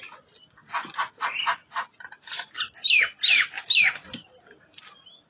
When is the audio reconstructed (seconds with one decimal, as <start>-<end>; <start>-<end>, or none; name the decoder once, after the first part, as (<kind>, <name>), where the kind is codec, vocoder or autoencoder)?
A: none